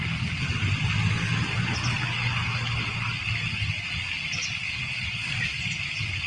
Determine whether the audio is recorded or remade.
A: recorded